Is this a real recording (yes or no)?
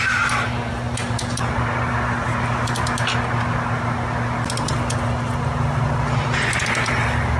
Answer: yes